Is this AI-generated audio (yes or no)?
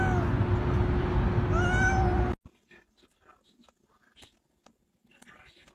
no